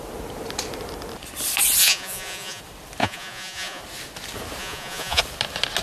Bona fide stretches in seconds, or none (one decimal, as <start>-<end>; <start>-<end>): 0.0-1.8; 2.6-3.0; 3.8-4.6; 5.2-5.8

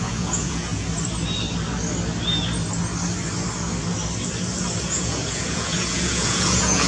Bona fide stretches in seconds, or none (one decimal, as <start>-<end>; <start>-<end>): 0.7-4.8

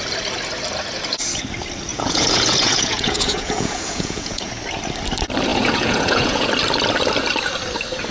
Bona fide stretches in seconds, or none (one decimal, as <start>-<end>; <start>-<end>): 0.0-1.9; 4.5-5.5; 6.5-8.1

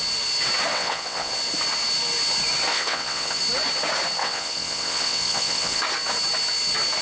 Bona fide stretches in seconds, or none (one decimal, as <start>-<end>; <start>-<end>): 0.0-0.7; 1.3-2.7; 3.4-4.2; 5.8-7.0